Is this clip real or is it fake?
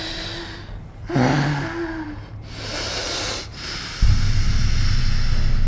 real